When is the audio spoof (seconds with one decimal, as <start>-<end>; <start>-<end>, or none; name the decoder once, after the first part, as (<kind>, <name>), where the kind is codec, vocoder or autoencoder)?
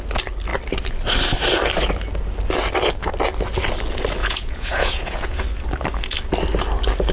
4.2-5.4 (vocoder, Vocos)